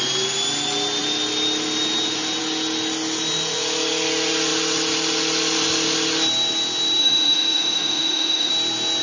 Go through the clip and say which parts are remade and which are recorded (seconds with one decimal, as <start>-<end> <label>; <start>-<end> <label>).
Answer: 0.0-7.0 recorded; 7.0-8.5 remade; 8.5-9.0 recorded